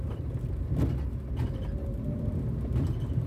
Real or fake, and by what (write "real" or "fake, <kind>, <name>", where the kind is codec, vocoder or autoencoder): real